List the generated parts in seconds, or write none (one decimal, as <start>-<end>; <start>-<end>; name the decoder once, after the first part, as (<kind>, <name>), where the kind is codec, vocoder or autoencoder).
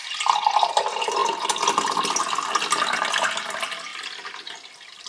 0.0-1.2 (vocoder, BigVGAN v2); 3.5-3.9